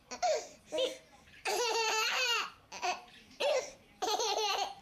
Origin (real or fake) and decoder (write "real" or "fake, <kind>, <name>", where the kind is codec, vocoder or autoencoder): fake, vocoder, BigVGAN v2